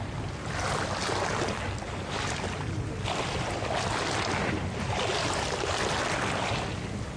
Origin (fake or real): real